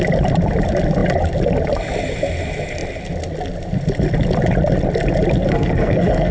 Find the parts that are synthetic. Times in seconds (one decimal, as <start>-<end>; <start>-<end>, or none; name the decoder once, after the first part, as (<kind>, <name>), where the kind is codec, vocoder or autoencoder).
5.5-6.3 (codec, SNAC)